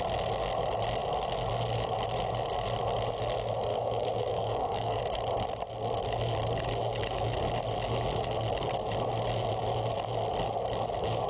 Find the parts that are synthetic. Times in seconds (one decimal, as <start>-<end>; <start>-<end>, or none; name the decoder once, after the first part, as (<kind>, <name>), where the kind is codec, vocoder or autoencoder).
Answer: 3.7-5.0 (codec, DAC)